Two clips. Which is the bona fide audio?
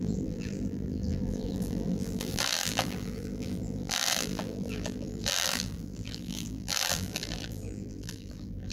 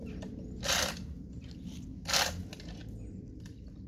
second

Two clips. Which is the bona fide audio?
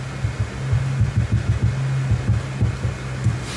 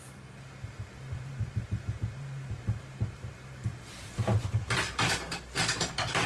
first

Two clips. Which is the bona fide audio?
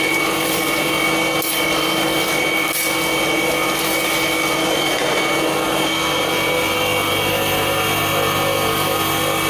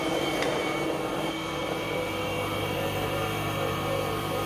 first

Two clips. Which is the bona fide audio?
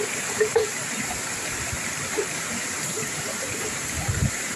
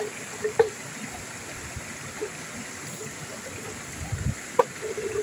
second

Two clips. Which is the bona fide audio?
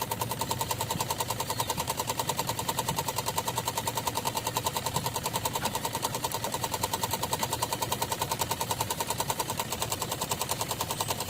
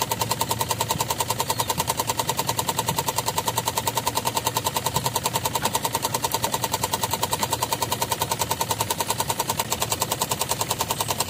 second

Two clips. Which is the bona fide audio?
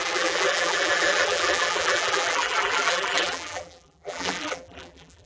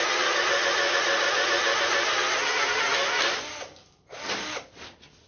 second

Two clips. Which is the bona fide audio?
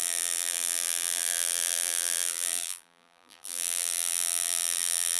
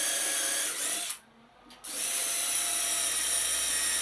second